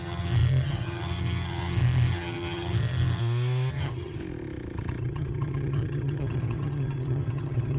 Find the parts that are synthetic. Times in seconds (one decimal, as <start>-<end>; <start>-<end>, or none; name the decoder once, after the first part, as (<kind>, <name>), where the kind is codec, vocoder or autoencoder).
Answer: 0.0-3.2 (vocoder, HiFi-GAN); 3.7-4.2; 5.0-7.8

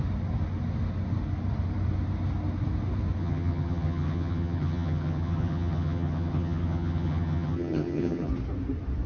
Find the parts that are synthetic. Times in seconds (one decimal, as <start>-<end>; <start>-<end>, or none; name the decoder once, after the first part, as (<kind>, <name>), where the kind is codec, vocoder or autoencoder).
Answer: 3.2-8.3 (vocoder, HiFi-GAN)